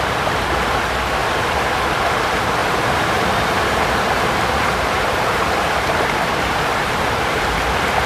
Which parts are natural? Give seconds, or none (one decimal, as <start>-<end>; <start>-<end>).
0.0-1.2; 1.7-2.6; 7.5-8.1